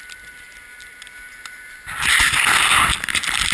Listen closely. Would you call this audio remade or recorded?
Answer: recorded